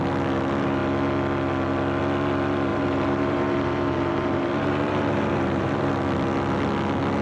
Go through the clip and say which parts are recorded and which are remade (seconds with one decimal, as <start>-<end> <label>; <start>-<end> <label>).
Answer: 0.0-2.7 recorded; 2.7-5.9 remade; 5.9-7.2 recorded